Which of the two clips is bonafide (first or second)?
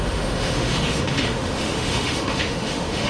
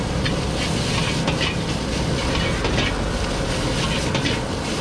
second